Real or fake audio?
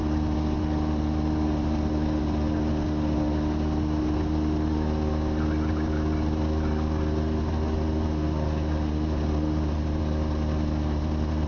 real